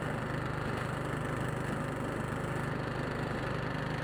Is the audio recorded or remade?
recorded